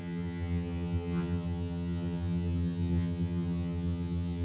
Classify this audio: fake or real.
fake